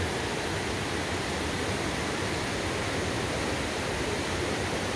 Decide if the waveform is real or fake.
fake